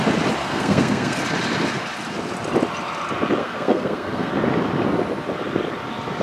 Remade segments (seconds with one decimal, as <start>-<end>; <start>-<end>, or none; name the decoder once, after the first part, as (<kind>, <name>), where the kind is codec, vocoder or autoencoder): 0.4-1.2 (codec, SNAC); 3.4-4.3